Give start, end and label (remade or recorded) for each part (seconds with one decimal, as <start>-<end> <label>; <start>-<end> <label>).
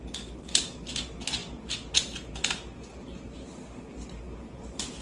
0.0-5.0 recorded